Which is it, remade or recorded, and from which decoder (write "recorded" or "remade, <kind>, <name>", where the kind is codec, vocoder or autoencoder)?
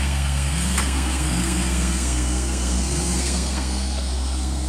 remade, codec, SNAC